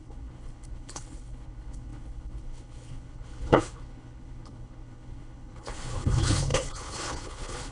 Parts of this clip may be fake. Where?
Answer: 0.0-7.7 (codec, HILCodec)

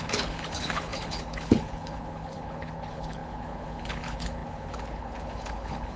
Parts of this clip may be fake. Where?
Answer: 0.0-6.0 (codec, HILCodec)

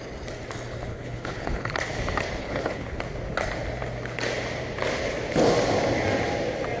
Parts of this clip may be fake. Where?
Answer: 0.9-1.7 (codec, HILCodec); 2.4-3.0

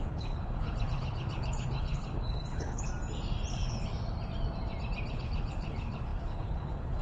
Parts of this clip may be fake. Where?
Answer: 0.0-2.9 (codec, HILCodec); 3.5-3.9; 5.1-7.0